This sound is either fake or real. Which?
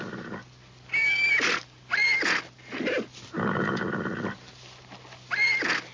real